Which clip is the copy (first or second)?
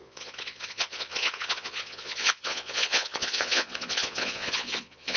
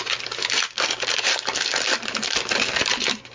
first